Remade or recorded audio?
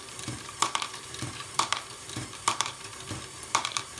remade